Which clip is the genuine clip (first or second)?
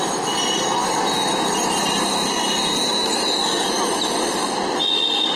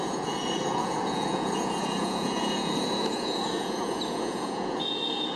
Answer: first